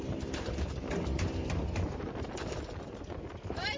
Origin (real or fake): real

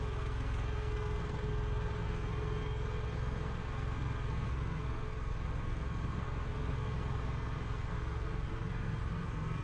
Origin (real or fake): fake